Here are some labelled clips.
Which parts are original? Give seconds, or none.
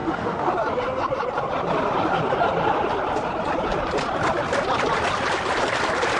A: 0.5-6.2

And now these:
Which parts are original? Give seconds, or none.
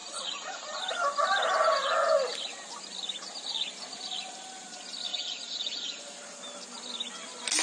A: 0.8-5.1; 6.0-7.6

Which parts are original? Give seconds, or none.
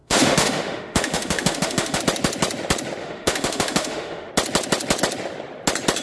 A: 2.0-3.0; 4.3-6.0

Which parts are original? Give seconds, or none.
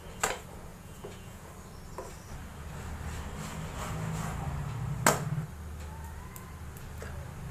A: 0.0-0.7; 1.5-7.5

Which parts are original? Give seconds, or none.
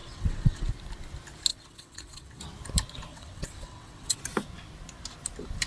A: 0.7-1.5; 2.4-3.1; 4.2-5.7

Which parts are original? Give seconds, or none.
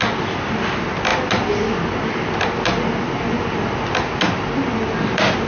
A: 0.0-5.5